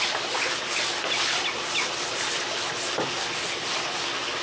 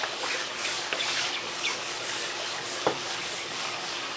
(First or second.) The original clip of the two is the first